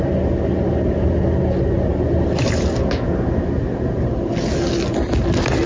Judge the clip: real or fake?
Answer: real